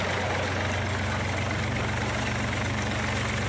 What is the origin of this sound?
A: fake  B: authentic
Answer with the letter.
B